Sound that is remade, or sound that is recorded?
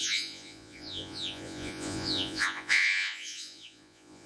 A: remade